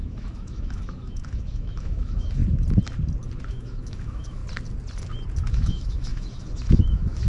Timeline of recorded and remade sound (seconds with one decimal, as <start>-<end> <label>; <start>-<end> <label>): 0.0-2.4 remade; 2.4-3.5 recorded; 3.5-4.4 remade; 4.4-5.5 recorded; 5.5-7.3 remade